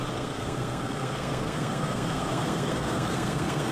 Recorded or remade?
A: remade